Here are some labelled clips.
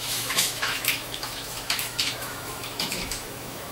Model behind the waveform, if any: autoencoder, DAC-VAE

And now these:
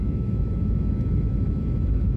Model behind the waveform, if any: autoencoder, DAC-VAE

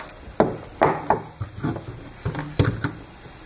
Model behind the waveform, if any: none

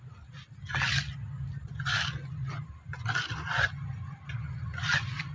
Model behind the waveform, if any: none